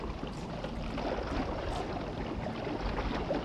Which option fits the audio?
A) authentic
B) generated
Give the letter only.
A